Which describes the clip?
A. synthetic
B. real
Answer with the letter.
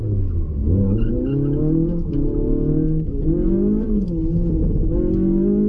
B